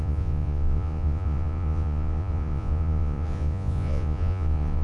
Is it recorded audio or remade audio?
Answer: remade